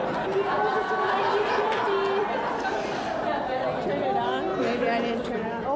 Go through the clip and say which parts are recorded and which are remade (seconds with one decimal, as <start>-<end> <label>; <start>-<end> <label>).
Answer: 0.0-5.8 recorded